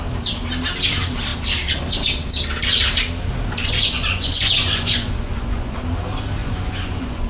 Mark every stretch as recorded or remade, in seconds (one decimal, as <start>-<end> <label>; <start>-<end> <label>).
0.0-3.6 recorded; 3.6-5.8 remade; 5.8-6.4 recorded; 6.4-7.3 remade